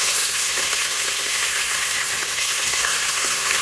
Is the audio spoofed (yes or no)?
yes